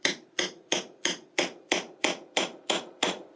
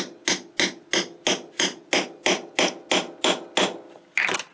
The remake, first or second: first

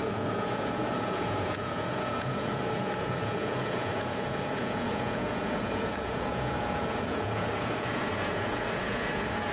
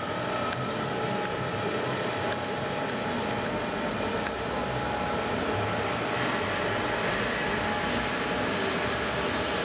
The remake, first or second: first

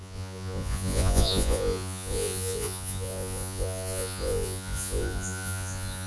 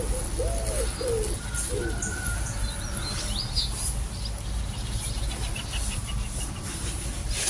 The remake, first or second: first